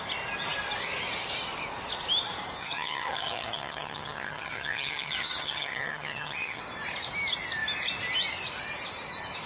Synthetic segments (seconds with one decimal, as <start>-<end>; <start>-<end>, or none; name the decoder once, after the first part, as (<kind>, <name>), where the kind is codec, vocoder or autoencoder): 2.6-6.6 (vocoder, HiFi-GAN)